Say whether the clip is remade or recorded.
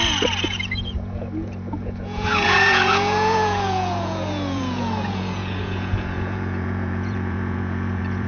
remade